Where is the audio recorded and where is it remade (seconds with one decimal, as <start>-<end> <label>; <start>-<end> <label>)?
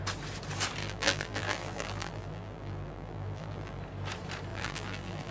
0.0-0.8 recorded; 0.8-3.8 remade; 3.8-4.5 recorded; 4.5-5.3 remade